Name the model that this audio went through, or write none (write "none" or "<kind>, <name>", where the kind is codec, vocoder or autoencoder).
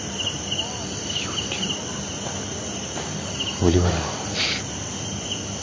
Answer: none